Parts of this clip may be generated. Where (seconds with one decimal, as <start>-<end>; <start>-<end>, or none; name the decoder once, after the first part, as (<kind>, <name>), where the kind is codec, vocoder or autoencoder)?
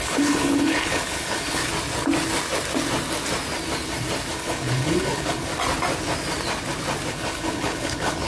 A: 0.0-1.6 (codec, HILCodec); 4.3-5.5; 7.1-8.3